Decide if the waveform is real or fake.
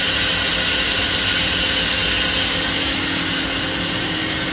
real